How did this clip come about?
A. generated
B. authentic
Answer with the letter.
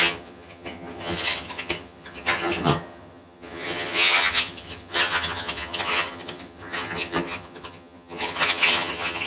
A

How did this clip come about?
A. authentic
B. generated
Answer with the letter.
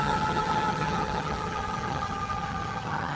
B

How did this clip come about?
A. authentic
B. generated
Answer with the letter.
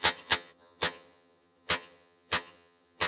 B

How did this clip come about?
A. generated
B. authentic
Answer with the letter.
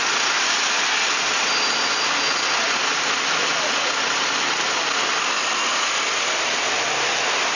B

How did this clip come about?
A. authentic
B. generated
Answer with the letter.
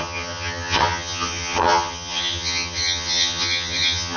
B